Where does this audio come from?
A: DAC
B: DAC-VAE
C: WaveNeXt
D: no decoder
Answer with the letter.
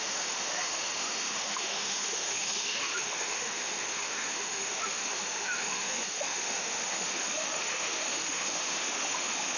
B